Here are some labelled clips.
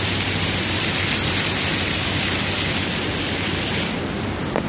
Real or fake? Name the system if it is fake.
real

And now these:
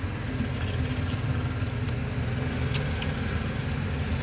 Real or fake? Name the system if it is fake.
real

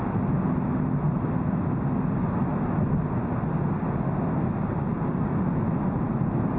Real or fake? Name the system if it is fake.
real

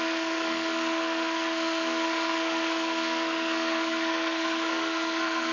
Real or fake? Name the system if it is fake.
fake, codec, SNAC